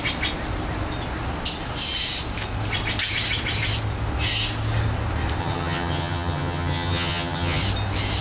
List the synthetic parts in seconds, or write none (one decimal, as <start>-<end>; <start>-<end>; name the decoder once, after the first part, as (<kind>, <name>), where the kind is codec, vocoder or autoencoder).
5.4-7.6 (vocoder, HiFi-GAN)